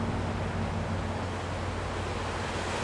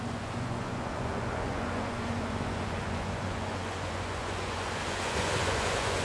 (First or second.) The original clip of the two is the first